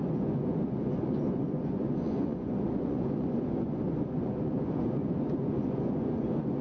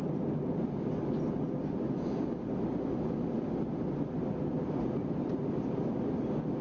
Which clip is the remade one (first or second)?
first